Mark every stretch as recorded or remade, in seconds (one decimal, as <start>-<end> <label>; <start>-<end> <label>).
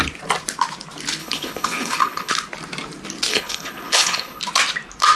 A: 0.0-1.2 recorded; 1.2-2.3 remade; 2.3-3.3 recorded; 3.3-4.4 remade; 4.4-5.2 recorded